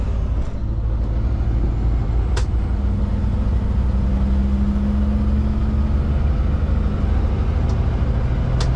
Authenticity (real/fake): real